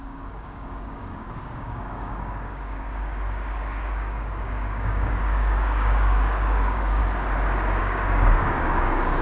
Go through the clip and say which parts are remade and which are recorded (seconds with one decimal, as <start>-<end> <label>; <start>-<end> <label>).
0.0-7.0 remade; 7.0-7.8 recorded; 7.8-9.2 remade